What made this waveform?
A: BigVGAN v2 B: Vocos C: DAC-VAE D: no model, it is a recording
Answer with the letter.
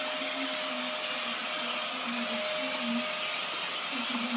D